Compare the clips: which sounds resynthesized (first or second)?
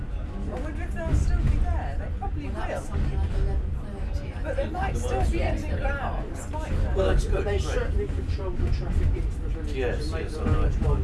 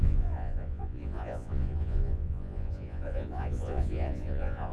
second